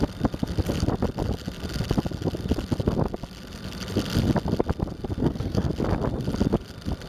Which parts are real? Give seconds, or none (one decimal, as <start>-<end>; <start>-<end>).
0.0-5.2; 5.7-7.1